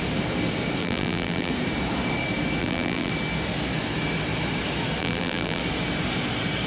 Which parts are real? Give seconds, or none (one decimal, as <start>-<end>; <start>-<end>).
0.0-0.8; 1.5-2.6; 3.1-5.0; 5.6-6.7